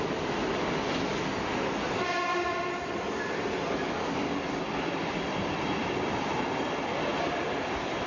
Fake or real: real